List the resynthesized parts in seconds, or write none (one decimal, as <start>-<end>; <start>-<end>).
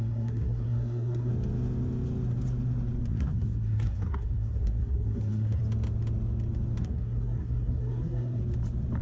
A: 0.0-1.3; 3.1-5.6; 6.8-8.4